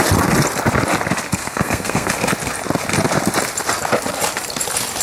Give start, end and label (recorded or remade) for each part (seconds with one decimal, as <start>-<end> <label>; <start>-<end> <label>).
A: 0.0-1.4 recorded; 1.4-2.1 remade; 2.1-5.0 recorded